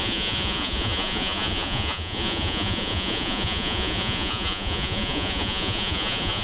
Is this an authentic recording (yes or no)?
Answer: no